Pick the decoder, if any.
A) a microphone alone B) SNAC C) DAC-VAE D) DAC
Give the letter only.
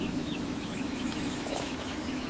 C